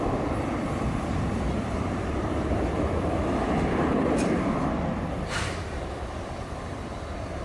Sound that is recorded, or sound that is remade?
remade